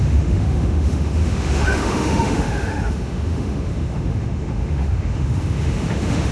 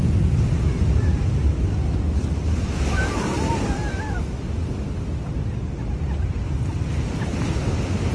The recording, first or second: second